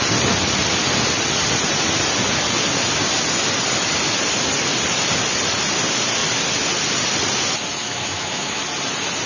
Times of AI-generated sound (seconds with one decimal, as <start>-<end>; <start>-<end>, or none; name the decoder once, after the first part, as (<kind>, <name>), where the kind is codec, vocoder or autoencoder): 7.8-8.6 (autoencoder, DAC-VAE)